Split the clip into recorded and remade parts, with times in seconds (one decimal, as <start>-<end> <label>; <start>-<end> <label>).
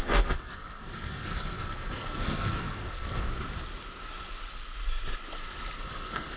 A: 0.0-3.3 remade; 3.3-5.8 recorded; 5.8-6.4 remade